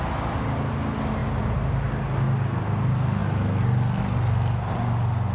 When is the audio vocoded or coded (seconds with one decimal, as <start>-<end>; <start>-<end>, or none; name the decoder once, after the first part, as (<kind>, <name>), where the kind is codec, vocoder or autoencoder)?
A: none